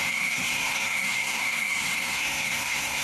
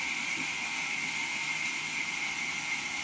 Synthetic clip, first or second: first